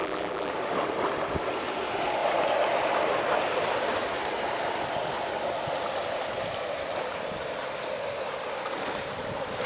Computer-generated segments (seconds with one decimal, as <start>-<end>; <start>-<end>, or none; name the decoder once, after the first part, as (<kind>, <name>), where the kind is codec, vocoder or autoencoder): 0.0-0.5 (vocoder, BigVGAN v2)